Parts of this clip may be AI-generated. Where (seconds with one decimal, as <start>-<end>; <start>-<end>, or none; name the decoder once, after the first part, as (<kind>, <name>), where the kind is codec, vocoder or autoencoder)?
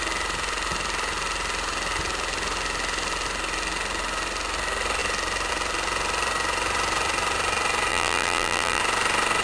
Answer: 7.9-8.8 (vocoder, BigVGAN v2)